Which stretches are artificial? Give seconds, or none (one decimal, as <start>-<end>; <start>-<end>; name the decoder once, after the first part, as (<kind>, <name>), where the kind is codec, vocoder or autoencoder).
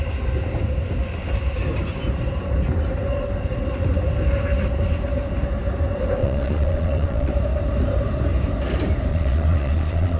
6.2-7.3 (vocoder, Vocos); 9.1-10.2